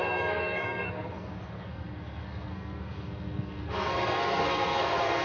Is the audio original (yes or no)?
no